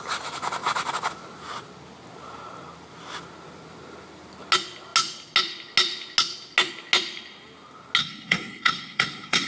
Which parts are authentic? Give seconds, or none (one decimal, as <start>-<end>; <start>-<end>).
0.0-8.0